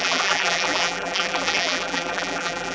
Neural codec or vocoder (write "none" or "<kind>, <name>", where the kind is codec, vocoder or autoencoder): vocoder, BigVGAN v2